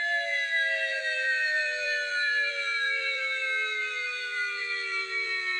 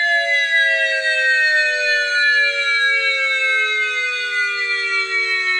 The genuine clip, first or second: second